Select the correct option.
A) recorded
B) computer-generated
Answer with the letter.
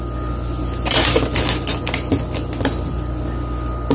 A